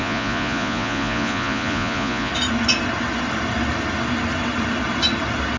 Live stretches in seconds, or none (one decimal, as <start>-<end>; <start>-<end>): 2.3-5.6